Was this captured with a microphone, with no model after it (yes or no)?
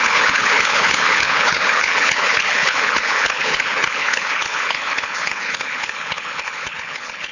no